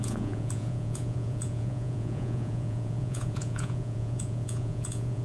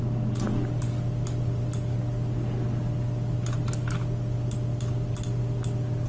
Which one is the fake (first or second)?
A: first